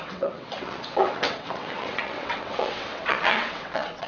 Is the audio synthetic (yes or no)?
yes